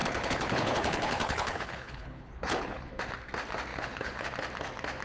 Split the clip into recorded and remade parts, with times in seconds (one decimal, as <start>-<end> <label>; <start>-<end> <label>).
0.0-3.0 remade; 3.0-3.7 recorded; 3.7-4.3 remade; 4.3-5.0 recorded